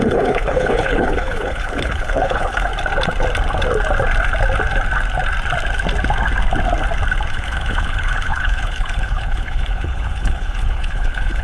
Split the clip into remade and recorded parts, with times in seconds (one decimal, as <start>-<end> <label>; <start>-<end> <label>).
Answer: 0.0-2.7 remade; 2.7-7.3 recorded; 7.3-11.4 remade